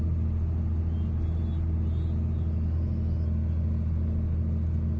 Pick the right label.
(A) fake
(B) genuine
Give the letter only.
B